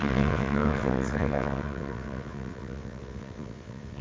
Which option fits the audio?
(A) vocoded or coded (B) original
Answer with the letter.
A